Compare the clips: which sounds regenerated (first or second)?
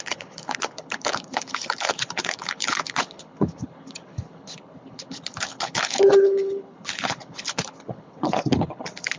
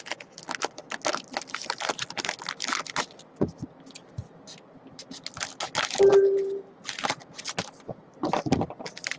first